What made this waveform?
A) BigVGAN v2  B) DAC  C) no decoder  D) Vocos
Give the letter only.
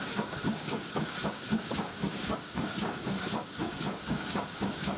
B